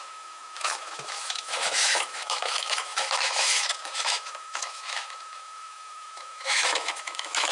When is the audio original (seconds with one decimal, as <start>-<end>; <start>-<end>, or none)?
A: none